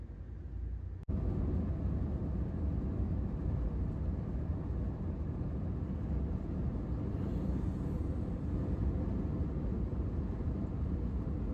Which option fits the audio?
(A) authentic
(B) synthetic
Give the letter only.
A